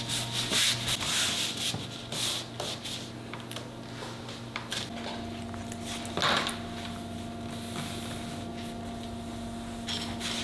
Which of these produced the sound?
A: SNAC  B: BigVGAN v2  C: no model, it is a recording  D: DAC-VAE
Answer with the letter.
C